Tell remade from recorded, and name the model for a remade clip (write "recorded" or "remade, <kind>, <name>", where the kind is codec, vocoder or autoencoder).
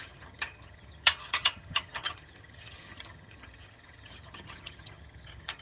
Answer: remade, vocoder, HiFi-GAN